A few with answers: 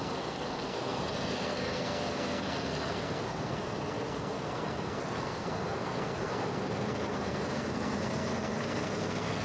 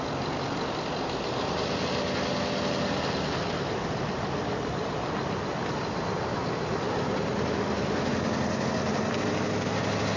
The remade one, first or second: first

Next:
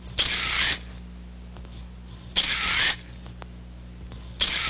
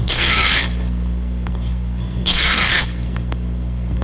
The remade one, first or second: second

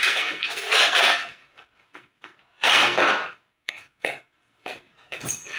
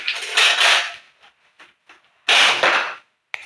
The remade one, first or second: first